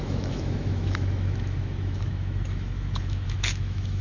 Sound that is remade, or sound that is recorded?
remade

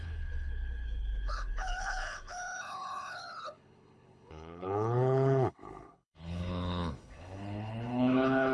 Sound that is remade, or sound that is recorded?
remade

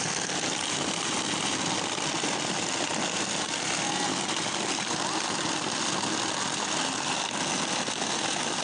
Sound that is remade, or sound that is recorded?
recorded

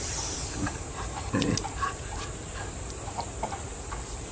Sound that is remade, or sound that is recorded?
remade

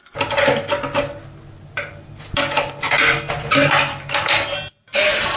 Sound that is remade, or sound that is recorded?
recorded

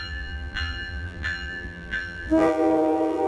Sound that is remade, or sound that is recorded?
remade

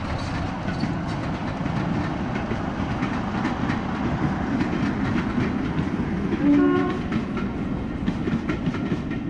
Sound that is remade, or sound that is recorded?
recorded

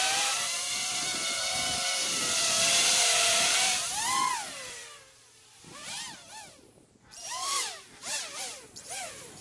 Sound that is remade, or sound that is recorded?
remade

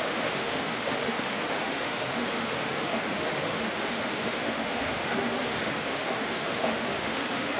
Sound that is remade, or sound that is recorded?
remade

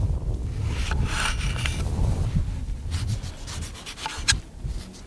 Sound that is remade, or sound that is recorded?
recorded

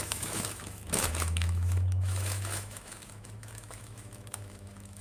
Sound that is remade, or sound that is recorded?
remade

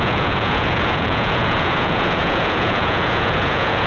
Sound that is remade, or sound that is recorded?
remade